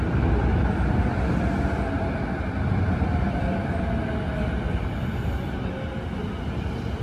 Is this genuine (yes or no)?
yes